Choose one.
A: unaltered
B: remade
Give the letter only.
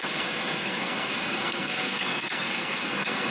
B